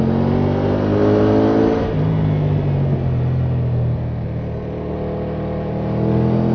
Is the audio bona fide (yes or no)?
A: yes